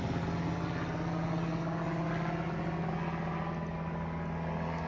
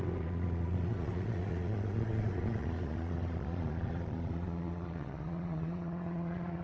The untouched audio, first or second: first